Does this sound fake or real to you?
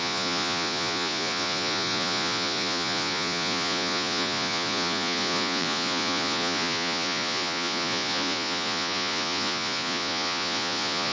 fake